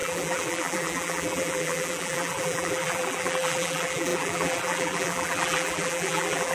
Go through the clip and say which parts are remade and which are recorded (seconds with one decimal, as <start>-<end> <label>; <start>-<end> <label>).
0.0-6.5 remade